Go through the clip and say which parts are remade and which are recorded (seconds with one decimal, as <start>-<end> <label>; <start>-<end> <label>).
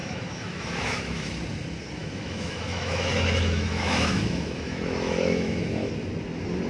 0.0-1.3 remade; 1.3-2.0 recorded; 2.0-5.9 remade; 5.9-6.7 recorded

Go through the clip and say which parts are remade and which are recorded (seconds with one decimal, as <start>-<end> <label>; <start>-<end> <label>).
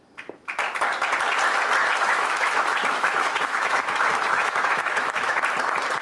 0.0-1.8 recorded; 1.8-5.4 remade; 5.4-6.0 recorded